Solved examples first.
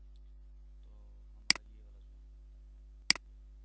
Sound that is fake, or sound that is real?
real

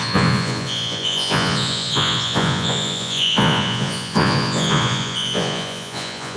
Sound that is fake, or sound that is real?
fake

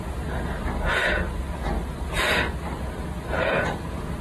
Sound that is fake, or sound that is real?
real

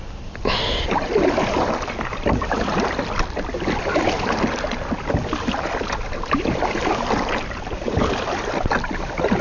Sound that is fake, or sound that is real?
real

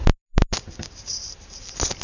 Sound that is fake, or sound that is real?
real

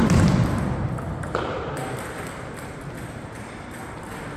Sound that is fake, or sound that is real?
fake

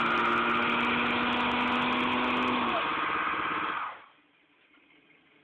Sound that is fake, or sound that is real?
real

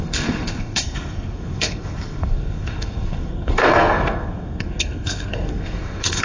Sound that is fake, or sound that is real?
fake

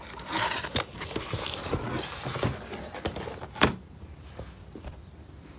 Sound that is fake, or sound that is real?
real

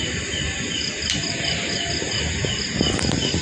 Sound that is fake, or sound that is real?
real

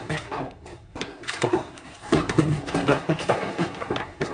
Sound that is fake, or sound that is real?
fake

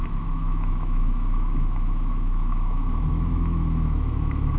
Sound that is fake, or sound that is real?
fake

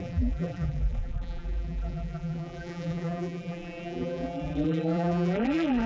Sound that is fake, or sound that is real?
fake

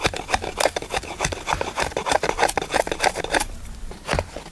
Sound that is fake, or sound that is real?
real